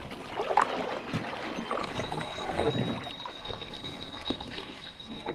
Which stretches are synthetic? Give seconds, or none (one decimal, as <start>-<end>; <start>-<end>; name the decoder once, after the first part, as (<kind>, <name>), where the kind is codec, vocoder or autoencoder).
1.8-2.7 (codec, SNAC); 3.3-5.3